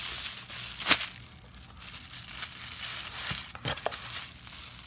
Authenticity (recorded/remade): recorded